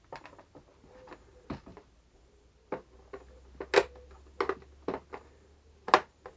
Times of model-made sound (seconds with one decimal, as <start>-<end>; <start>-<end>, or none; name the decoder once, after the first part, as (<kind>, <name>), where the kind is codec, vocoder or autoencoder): none